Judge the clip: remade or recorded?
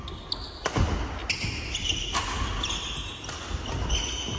recorded